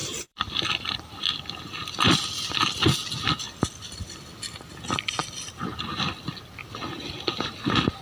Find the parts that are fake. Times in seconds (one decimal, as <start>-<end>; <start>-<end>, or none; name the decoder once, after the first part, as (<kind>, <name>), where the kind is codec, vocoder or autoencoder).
0.0-1.3 (vocoder, BigVGAN v2); 5.2-5.8